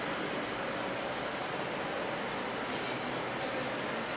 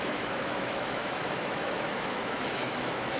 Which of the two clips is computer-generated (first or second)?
second